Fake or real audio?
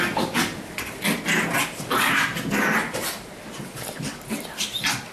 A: real